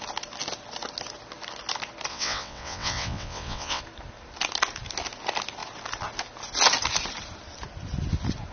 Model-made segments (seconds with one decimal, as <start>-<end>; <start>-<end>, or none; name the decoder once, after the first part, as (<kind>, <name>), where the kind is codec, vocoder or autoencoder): 2.1-3.8 (vocoder, WaveNeXt)